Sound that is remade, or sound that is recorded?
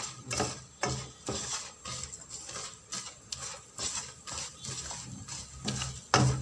recorded